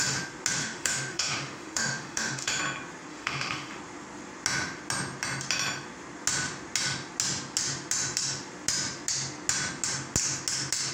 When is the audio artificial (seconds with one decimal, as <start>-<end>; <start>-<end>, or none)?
0.6-2.6; 3.1-3.8